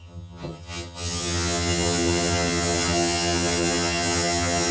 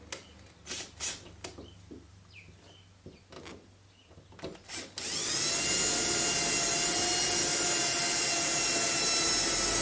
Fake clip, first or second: first